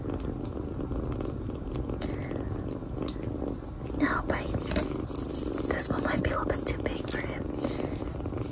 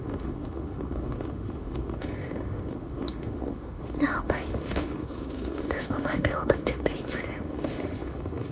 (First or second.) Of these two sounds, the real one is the first